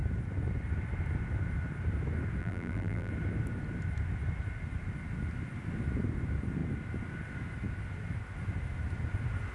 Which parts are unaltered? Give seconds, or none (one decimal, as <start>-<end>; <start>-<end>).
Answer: 0.0-2.4; 3.1-9.5